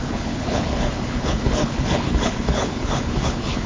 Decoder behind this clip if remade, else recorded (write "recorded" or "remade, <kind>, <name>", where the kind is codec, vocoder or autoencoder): remade, codec, HILCodec